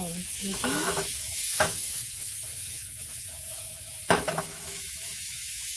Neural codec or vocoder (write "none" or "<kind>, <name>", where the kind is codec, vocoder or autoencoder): autoencoder, DAC-VAE